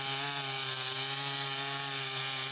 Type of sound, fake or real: real